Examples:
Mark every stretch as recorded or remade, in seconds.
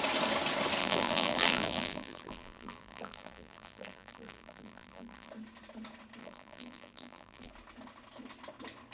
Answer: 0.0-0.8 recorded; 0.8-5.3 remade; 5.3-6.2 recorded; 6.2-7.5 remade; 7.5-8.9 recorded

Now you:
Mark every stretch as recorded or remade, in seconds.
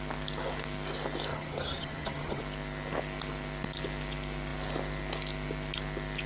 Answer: 0.0-1.3 recorded; 1.3-2.4 remade; 2.4-6.3 recorded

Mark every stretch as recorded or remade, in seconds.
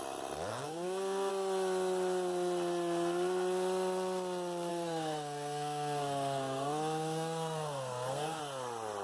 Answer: 0.0-0.5 recorded; 0.5-1.3 remade; 1.3-4.7 recorded; 4.7-8.4 remade; 8.4-9.0 recorded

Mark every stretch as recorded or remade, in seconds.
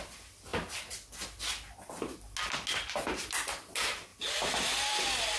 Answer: 0.0-5.4 recorded